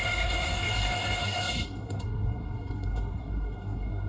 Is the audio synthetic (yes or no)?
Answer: yes